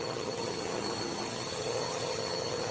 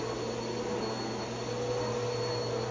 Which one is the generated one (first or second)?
first